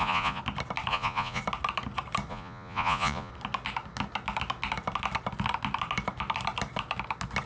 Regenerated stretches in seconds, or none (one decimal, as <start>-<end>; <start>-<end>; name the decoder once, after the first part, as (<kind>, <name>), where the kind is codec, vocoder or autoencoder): 0.0-0.4 (vocoder, Vocos); 0.9-1.4; 2.3-3.3